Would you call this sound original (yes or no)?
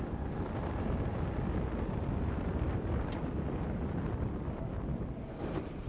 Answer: yes